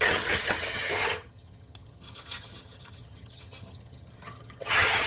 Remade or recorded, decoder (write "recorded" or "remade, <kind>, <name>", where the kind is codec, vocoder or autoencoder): remade, vocoder, HiFi-GAN